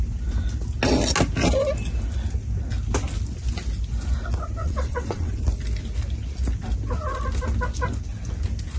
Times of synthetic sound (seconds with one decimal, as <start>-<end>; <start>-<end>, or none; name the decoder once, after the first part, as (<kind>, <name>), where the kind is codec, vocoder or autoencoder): 4.6-5.3 (vocoder, WaveNeXt)